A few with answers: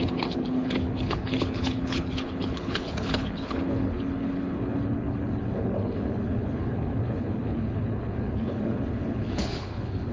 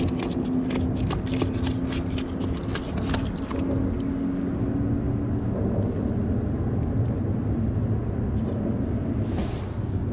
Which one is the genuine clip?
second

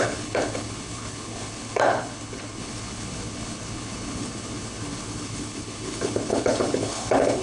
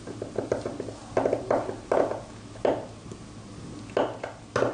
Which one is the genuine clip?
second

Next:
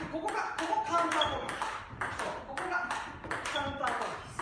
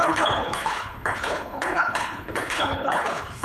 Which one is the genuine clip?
first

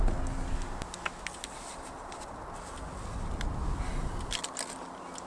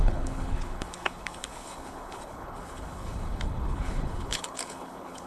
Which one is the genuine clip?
first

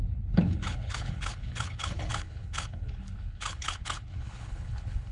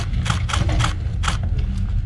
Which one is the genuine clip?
second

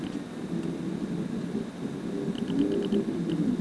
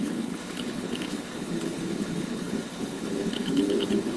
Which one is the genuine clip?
first